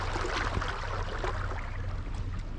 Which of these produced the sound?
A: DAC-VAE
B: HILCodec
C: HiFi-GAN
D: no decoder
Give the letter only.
D